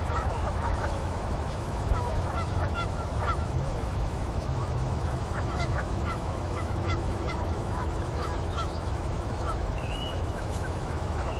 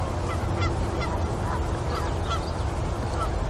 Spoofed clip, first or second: first